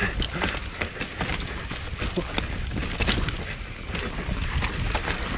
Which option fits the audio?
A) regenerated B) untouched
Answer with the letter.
B